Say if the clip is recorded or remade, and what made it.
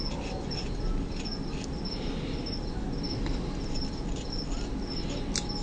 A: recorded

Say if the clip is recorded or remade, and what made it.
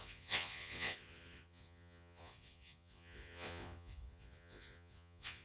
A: remade, vocoder, Vocos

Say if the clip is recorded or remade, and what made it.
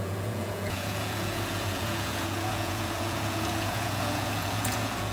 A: remade, vocoder, Vocos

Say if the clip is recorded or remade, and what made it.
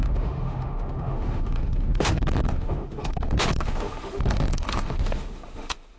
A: remade, autoencoder, DAC-VAE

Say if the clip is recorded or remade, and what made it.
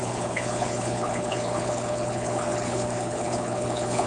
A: remade, codec, HILCodec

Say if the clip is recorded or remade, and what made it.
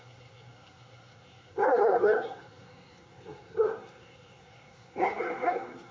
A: remade, codec, SNAC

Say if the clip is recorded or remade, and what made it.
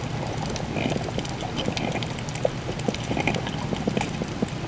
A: recorded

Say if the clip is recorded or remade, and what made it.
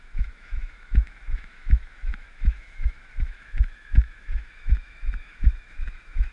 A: remade, autoencoder, DAC-VAE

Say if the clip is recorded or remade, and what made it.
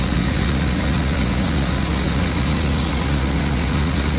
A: remade, vocoder, Vocos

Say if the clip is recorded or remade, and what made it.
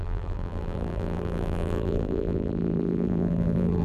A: remade, vocoder, BigVGAN v2